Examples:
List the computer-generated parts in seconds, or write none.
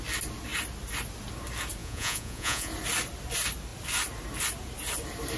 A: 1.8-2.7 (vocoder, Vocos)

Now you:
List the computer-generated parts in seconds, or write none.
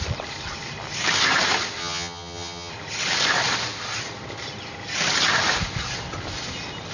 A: 1.8-2.7 (vocoder, HiFi-GAN)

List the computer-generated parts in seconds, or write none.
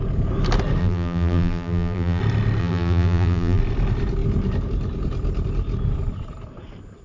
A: 0.8-2.2 (vocoder, BigVGAN v2); 2.6-3.6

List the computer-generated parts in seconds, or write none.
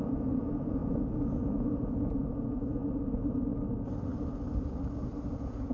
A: 0.0-2.8 (vocoder, Vocos); 5.3-5.7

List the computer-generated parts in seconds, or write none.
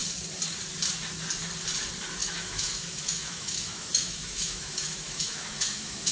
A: 2.2-6.1 (autoencoder, DAC-VAE)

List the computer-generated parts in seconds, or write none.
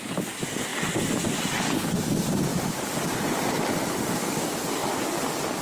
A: 2.5-3.7 (vocoder, BigVGAN v2)